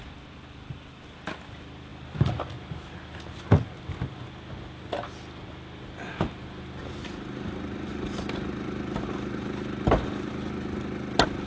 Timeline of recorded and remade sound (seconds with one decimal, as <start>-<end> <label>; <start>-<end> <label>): 0.0-6.8 recorded; 6.8-10.3 remade; 10.3-11.5 recorded